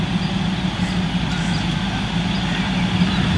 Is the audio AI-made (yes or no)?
no